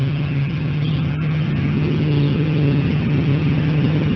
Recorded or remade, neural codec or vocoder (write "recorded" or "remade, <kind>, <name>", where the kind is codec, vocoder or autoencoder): remade, vocoder, HiFi-GAN